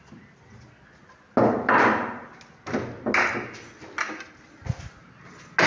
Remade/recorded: recorded